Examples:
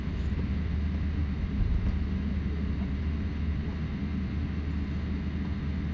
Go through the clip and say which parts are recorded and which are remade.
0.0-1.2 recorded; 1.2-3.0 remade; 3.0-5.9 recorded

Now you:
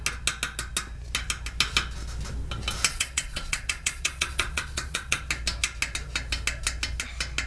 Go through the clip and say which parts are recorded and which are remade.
0.0-2.9 recorded; 2.9-5.2 remade; 5.2-7.5 recorded

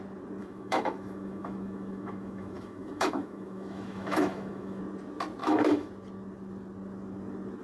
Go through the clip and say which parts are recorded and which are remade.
0.0-0.4 recorded; 0.4-4.8 remade; 4.8-5.4 recorded; 5.4-5.9 remade; 5.9-7.6 recorded